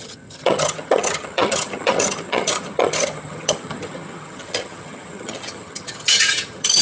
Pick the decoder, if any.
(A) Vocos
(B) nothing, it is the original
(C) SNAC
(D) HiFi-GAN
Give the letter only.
D